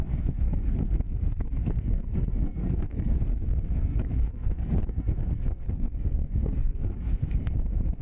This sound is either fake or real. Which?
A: fake